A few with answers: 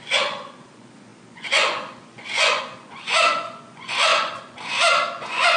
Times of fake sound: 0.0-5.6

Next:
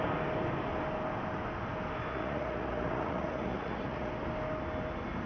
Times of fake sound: 2.1-4.1

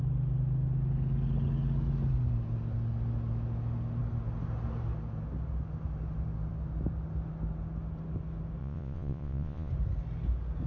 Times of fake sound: 8.6-9.7

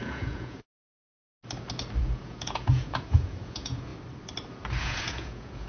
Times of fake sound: 0.0-0.7; 2.0-3.9; 4.8-5.7

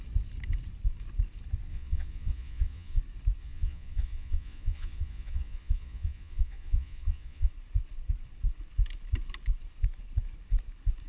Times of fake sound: 1.7-3.0; 3.4-7.5

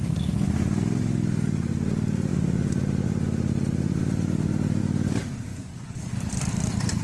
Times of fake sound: 5.5-6.0